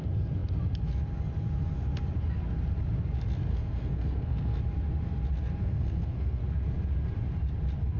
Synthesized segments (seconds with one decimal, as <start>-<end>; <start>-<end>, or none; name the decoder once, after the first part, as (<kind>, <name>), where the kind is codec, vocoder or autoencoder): 3.5-4.6 (codec, SNAC); 5.6-6.4